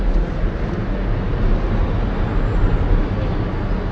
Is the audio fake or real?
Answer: real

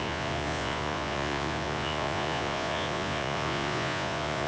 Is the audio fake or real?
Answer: fake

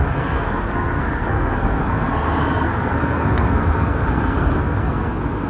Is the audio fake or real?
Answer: fake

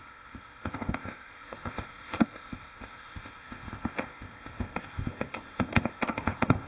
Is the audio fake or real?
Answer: fake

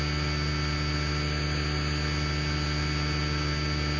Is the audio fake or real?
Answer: real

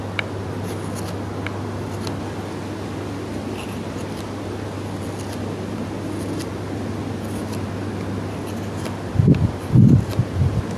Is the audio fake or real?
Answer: real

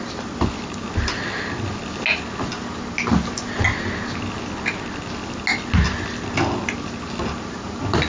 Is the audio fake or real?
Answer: real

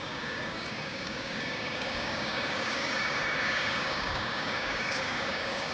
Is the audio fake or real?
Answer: fake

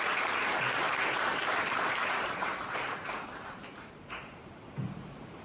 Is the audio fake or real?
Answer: fake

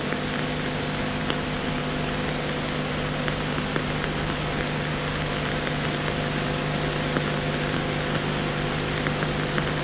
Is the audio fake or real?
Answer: real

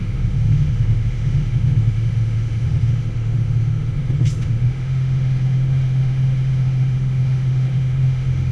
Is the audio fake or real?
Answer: fake